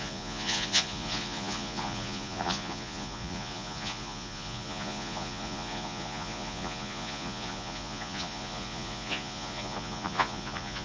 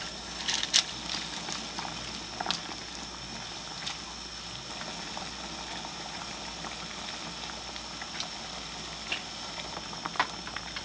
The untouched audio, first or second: second